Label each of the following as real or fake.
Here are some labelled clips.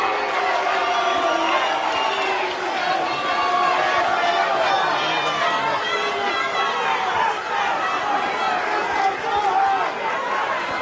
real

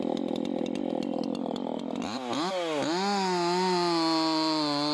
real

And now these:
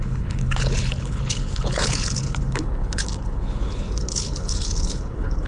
fake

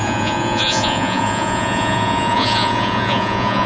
fake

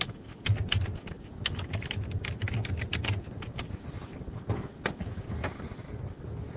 real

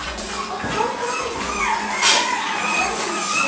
fake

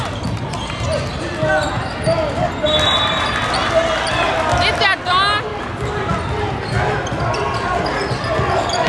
real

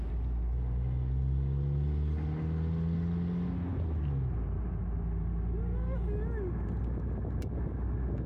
real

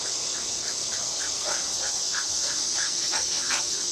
fake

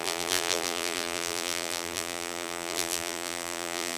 fake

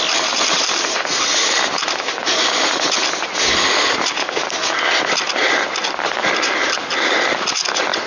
real